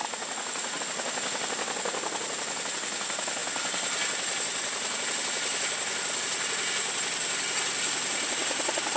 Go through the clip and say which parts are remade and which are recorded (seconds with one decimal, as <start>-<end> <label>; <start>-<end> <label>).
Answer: 0.0-0.8 remade; 0.8-9.0 recorded